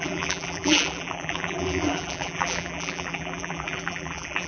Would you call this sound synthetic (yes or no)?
yes